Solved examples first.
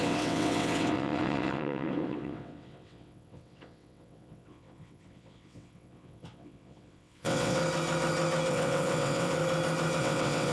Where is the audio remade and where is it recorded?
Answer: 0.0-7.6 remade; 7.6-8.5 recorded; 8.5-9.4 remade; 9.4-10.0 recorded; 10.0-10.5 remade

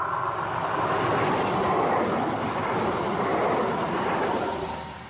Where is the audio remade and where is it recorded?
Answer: 0.0-5.1 recorded